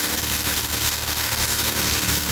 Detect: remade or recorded remade